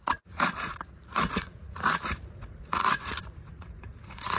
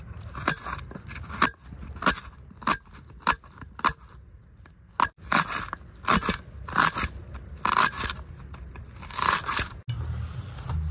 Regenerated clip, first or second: first